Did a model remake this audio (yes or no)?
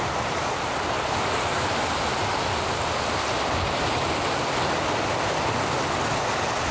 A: no